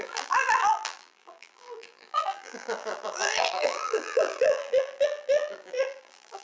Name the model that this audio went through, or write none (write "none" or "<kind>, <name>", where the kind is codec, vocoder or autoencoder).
vocoder, BigVGAN v2